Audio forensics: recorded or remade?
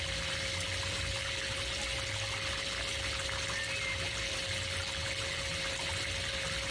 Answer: recorded